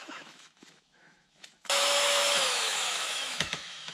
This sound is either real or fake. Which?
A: fake